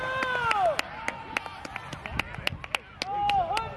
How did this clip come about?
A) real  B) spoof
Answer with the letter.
A